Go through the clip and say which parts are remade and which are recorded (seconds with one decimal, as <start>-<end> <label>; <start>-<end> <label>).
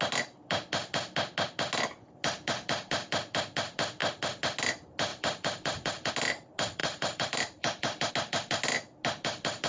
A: 0.0-5.1 recorded; 5.1-6.1 remade; 6.1-6.8 recorded; 6.8-8.1 remade; 8.1-9.7 recorded